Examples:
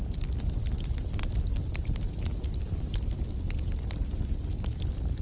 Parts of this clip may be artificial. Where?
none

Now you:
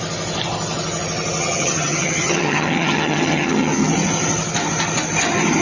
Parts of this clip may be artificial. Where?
1.4-3.9 (vocoder, HiFi-GAN)

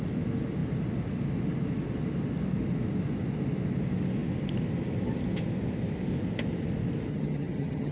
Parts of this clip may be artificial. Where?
7.1-7.9 (vocoder, HiFi-GAN)

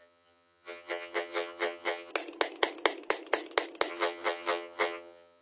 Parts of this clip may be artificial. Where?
0.0-2.1 (vocoder, HiFi-GAN); 3.9-5.4